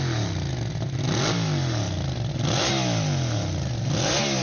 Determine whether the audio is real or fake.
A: real